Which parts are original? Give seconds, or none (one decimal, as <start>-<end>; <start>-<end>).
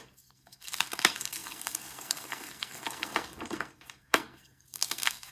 none